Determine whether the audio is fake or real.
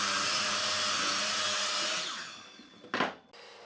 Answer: real